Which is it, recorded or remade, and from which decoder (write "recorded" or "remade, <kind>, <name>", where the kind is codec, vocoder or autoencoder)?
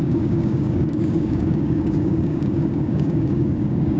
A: remade, codec, DAC